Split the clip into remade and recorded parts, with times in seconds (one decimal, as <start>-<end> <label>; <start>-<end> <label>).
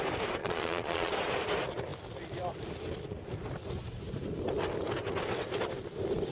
0.0-0.4 recorded; 0.4-1.1 remade; 1.1-6.3 recorded